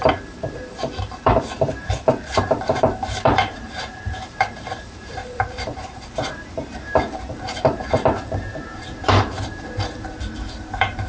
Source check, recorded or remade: remade